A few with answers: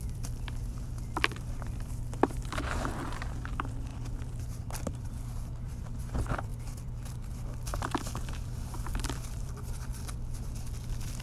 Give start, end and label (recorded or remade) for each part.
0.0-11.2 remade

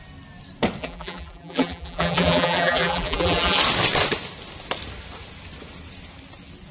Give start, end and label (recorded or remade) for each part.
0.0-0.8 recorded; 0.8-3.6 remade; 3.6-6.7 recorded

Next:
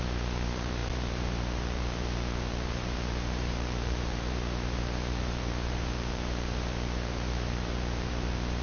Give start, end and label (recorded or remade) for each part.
0.0-8.6 remade